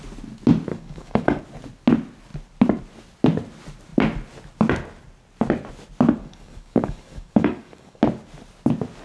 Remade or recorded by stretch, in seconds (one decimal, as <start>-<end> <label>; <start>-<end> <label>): 0.0-0.7 recorded; 0.7-1.4 remade; 1.4-6.2 recorded; 6.2-8.0 remade; 8.0-9.0 recorded